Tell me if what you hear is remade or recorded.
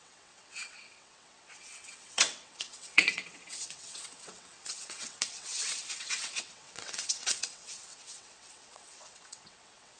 remade